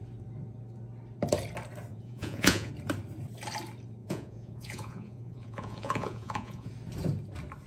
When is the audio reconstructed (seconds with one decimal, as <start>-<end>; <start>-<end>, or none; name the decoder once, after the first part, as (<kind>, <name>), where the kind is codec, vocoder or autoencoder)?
1.9-2.7 (vocoder, Vocos); 4.0-6.7